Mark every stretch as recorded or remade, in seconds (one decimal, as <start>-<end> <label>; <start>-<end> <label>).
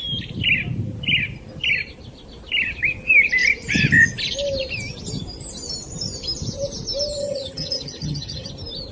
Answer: 0.0-7.2 recorded; 7.2-8.5 remade; 8.5-8.9 recorded